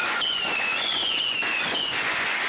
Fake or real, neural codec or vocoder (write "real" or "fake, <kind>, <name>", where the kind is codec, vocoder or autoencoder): fake, vocoder, Vocos